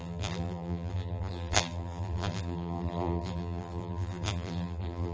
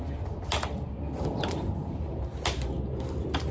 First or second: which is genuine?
second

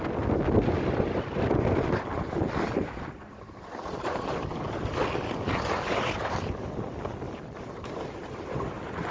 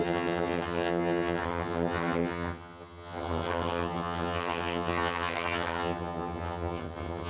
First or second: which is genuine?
first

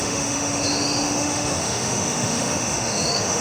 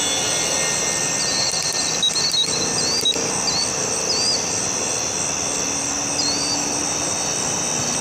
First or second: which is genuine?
second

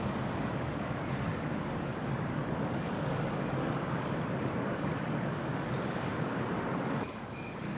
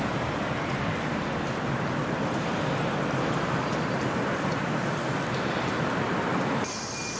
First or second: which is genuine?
second